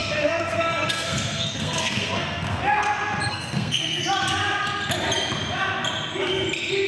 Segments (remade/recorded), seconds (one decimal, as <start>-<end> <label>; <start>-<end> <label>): 0.0-2.6 remade; 2.6-3.3 recorded; 3.3-4.0 remade; 4.0-6.9 recorded